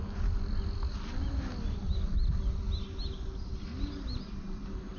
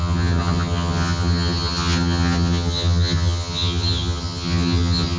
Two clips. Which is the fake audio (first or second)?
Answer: second